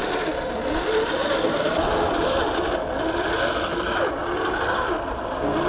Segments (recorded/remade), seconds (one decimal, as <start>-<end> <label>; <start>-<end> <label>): 0.0-3.4 remade; 3.4-5.7 recorded